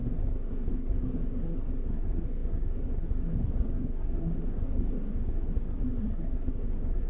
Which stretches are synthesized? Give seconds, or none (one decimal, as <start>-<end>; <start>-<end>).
0.0-7.1